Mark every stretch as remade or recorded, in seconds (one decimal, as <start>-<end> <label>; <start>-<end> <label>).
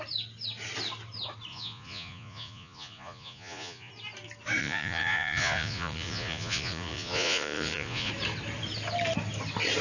0.0-1.5 recorded; 1.5-3.9 remade; 3.9-4.6 recorded; 4.6-8.1 remade; 8.1-9.8 recorded